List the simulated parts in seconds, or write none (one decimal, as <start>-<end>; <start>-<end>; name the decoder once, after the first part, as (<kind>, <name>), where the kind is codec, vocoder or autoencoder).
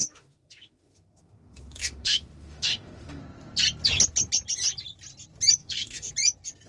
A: 0.0-3.2 (autoencoder, DAC-VAE); 5.6-6.1